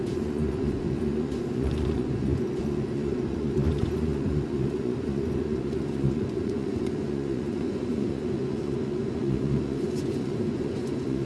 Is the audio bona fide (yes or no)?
no